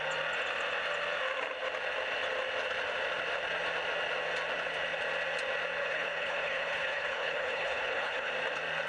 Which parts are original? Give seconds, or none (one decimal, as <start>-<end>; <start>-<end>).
0.0-5.8; 8.3-8.9